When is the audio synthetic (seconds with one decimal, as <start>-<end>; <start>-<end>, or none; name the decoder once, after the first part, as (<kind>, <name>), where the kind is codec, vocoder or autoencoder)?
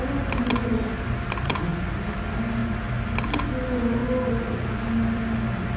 none